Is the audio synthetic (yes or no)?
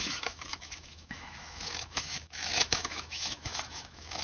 yes